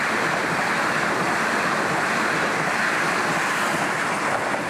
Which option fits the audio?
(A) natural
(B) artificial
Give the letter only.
A